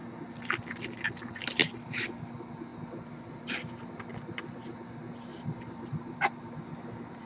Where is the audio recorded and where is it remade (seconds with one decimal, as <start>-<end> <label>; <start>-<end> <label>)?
0.0-1.6 recorded; 1.6-2.2 remade; 2.2-5.3 recorded; 5.3-6.4 remade; 6.4-7.3 recorded